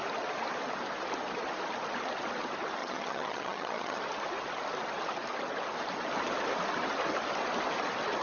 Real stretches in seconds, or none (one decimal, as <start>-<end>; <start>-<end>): 0.0-2.8; 4.0-8.2